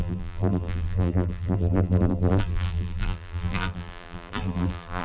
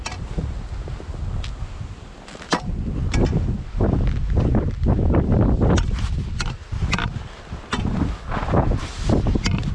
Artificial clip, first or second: first